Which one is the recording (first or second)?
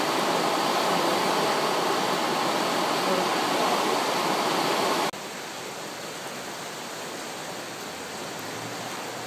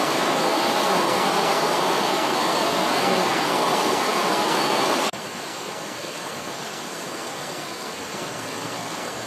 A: first